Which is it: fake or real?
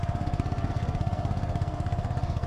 fake